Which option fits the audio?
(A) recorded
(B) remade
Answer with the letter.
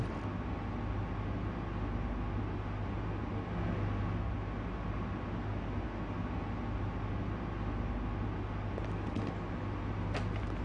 A